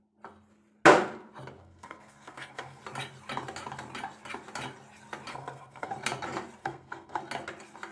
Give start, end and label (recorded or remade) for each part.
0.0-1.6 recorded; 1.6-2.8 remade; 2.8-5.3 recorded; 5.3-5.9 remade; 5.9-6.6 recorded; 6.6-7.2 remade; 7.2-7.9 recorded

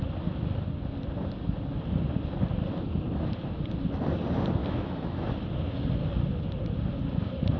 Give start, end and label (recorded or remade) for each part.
0.0-4.6 recorded; 4.6-5.3 remade; 5.3-7.6 recorded

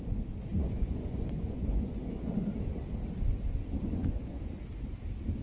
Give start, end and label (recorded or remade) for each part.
0.0-0.5 recorded; 0.5-2.5 remade; 2.5-3.9 recorded; 3.9-4.4 remade; 4.4-5.4 recorded

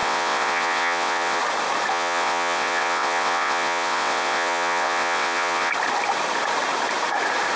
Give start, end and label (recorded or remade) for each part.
0.0-1.4 remade; 1.4-1.9 recorded; 1.9-5.7 remade; 5.7-7.6 recorded

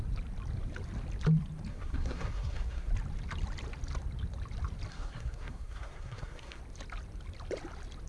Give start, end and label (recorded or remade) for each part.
0.0-1.7 recorded; 1.7-2.9 remade; 2.9-4.9 recorded; 4.9-6.6 remade; 6.6-8.1 recorded

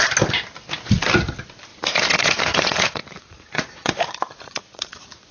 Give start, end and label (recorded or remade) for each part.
0.0-1.7 recorded; 1.7-5.3 remade

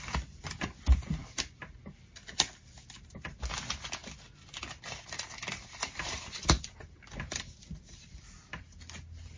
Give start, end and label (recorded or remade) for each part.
0.0-5.8 recorded; 5.8-8.6 remade; 8.6-9.4 recorded